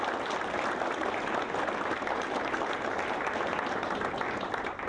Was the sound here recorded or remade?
recorded